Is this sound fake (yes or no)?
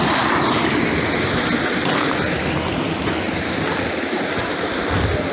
no